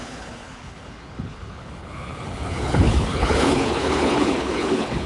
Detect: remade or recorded remade